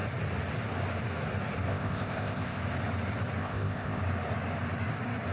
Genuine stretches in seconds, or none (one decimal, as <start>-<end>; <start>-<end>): 0.0-1.7; 2.6-3.4; 4.0-5.3

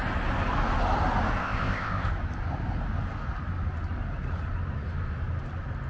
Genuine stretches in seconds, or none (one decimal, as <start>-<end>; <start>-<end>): 0.0-1.4; 2.1-5.9